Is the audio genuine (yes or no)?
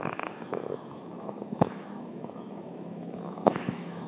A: no